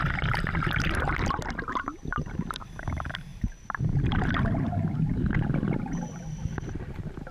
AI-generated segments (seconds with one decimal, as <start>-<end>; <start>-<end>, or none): none